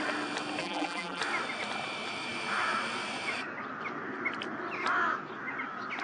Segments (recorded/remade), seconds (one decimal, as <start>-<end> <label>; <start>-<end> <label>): 0.0-0.6 recorded; 0.6-1.2 remade; 1.2-6.0 recorded